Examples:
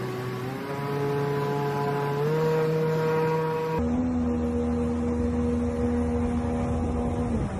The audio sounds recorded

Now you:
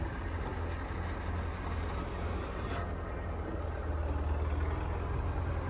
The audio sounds recorded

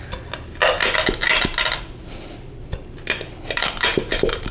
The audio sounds recorded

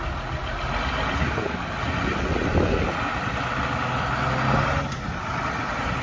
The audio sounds recorded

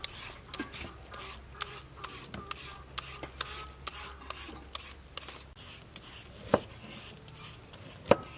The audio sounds recorded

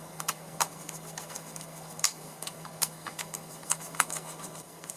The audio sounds remade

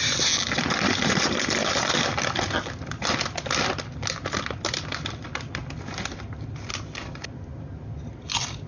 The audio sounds recorded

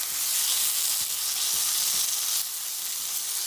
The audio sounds recorded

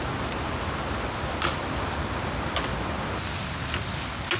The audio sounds recorded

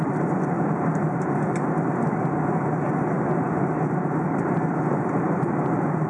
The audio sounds recorded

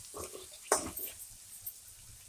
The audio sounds recorded